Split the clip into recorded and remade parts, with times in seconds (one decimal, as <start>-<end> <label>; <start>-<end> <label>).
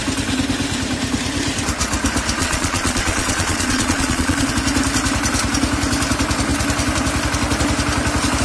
0.0-2.4 recorded; 2.4-4.5 remade; 4.5-8.4 recorded